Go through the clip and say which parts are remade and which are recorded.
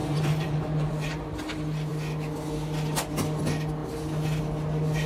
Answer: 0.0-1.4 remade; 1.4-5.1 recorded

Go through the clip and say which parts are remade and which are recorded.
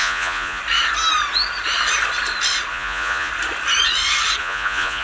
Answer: 0.0-0.6 remade; 0.6-2.7 recorded; 2.7-3.3 remade; 3.3-4.4 recorded; 4.4-5.0 remade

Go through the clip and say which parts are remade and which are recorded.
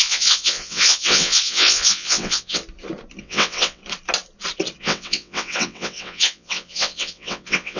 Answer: 0.0-2.6 remade; 2.6-3.2 recorded; 3.2-3.8 remade; 3.8-4.8 recorded; 4.8-7.8 remade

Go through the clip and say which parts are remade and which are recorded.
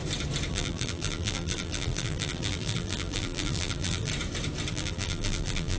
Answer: 0.0-0.5 recorded; 0.5-4.1 remade; 4.1-4.7 recorded; 4.7-5.8 remade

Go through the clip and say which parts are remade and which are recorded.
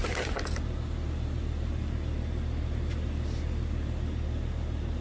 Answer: 0.0-5.0 recorded